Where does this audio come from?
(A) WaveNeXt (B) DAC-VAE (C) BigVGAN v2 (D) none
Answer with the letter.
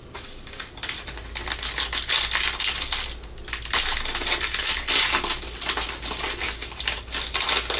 D